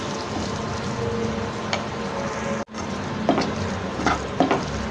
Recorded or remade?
recorded